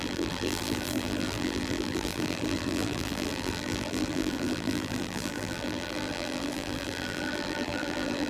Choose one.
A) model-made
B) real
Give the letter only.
A